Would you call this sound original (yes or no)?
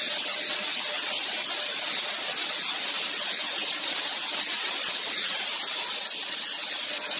yes